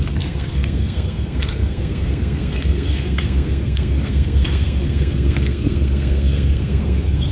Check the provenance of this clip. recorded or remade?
remade